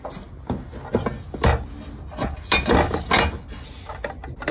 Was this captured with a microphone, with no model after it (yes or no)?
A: yes